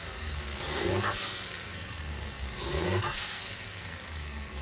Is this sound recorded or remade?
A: remade